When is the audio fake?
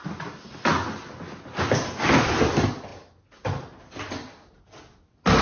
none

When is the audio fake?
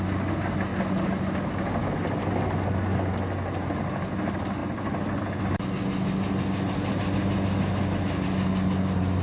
none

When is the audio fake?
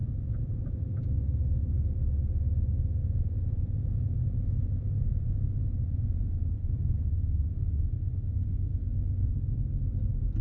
0.0-0.8 (vocoder, Vocos); 3.0-6.7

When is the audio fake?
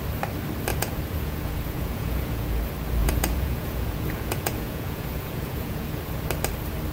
0.7-2.6 (vocoder, Vocos); 3.0-6.0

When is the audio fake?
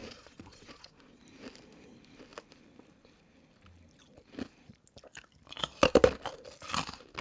0.0-1.2 (vocoder, Vocos)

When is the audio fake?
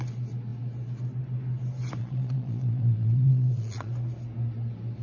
2.0-3.9 (vocoder, Vocos)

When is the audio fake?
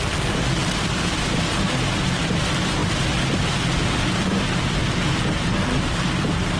none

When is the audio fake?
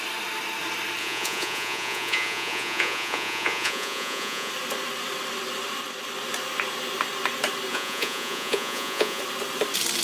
1.0-4.5 (vocoder, Vocos); 7.7-9.2